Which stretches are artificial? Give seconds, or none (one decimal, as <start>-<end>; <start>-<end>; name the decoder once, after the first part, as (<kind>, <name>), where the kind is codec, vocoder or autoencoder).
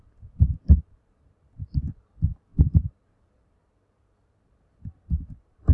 0.0-5.7 (vocoder, BigVGAN v2)